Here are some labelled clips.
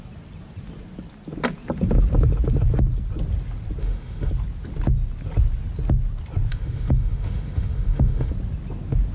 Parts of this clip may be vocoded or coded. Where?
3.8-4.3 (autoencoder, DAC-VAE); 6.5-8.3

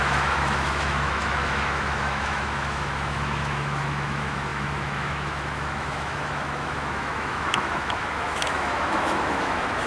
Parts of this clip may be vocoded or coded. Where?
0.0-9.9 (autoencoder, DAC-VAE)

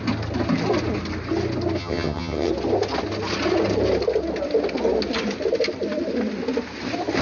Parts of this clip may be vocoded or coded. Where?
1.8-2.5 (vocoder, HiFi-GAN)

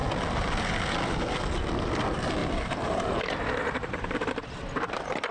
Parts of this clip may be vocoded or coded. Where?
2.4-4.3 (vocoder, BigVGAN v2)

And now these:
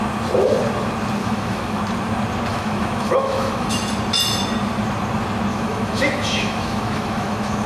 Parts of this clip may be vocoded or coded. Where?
1.2-1.8 (autoencoder, DAC-VAE); 2.5-3.8; 5.5-7.7

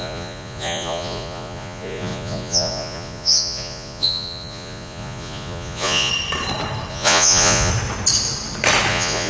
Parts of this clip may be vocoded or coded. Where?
0.0-6.1 (vocoder, Vocos); 6.9-7.7; 8.9-9.3